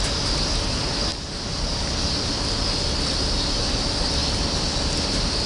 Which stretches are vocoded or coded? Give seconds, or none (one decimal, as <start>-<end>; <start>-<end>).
none

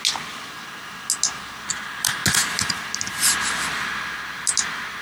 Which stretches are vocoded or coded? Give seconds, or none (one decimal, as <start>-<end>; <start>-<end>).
none

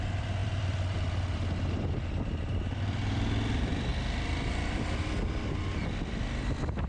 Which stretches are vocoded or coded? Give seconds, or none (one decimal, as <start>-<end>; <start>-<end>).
0.0-3.9

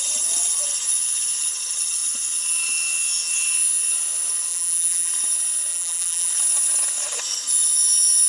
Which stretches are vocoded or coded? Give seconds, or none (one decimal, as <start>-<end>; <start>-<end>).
4.5-5.1; 5.7-6.3

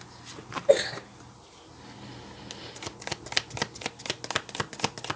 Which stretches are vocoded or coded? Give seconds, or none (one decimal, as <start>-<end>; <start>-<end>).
none

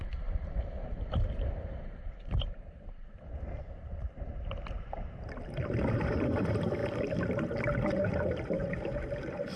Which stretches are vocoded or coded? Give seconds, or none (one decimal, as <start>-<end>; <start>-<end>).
0.0-6.8; 8.0-9.6

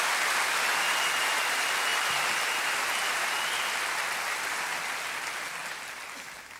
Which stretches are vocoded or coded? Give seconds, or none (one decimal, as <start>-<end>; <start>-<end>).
none

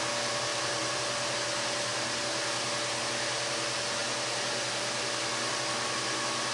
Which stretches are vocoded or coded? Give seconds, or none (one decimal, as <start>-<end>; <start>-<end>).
0.5-1.0